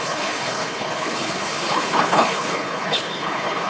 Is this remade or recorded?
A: remade